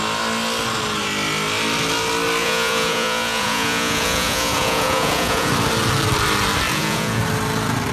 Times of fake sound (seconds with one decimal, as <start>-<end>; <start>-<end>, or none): 2.4-5.5; 6.7-7.2